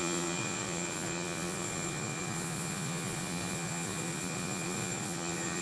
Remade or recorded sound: remade